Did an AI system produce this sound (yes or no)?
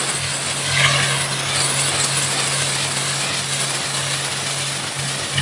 no